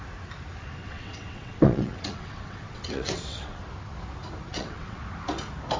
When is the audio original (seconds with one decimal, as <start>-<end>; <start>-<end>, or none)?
0.0-0.8; 3.6-4.5; 5.0-5.8